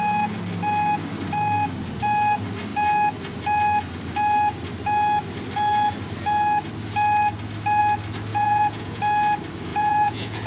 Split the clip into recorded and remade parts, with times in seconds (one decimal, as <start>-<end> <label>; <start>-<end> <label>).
0.0-8.3 recorded; 8.3-9.0 remade; 9.0-9.7 recorded; 9.7-10.5 remade